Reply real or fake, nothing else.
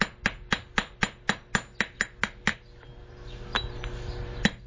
real